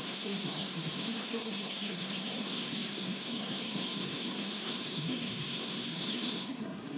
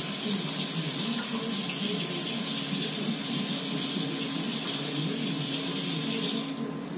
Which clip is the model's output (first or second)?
first